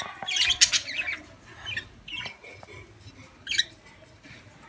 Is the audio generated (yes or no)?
no